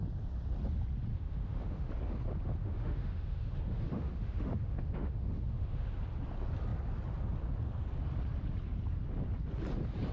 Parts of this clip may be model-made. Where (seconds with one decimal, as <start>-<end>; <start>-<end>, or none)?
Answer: 1.1-1.9; 2.6-5.9